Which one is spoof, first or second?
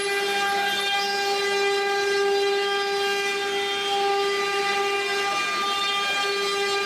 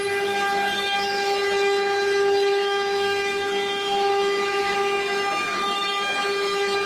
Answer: second